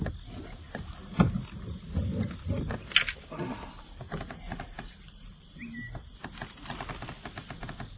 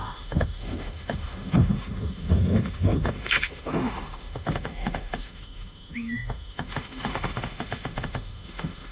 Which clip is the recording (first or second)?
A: first